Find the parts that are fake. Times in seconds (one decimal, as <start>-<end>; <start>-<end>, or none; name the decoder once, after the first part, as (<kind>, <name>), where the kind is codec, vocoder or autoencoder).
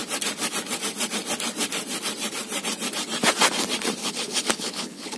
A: 4.0-5.2 (codec, HILCodec)